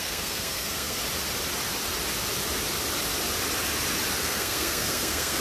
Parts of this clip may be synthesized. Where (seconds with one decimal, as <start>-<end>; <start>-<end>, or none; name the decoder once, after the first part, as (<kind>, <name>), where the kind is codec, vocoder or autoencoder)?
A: 0.0-1.0 (codec, SNAC); 4.2-5.4

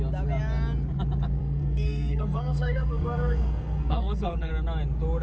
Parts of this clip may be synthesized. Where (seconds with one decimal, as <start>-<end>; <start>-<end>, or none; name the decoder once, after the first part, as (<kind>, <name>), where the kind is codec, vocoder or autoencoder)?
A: 1.4-4.5 (codec, SNAC)

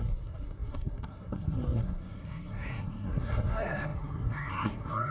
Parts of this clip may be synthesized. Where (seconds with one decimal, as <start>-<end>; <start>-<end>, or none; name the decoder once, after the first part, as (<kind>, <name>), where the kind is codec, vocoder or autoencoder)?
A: 0.0-5.1 (codec, SNAC)

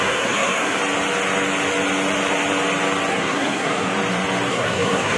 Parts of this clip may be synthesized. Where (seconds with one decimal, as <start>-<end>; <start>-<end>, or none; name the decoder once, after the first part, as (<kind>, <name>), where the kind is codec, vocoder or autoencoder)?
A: 0.0-0.8 (codec, SNAC); 3.1-3.9; 4.5-5.2